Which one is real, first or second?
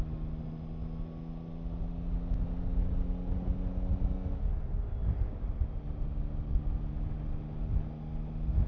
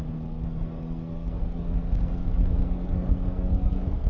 first